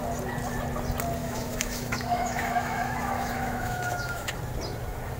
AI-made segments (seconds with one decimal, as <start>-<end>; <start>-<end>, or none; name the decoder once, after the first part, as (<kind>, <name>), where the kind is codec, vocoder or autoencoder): 1.2-4.3 (autoencoder, DAC-VAE)